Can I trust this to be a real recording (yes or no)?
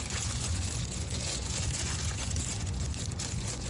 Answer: no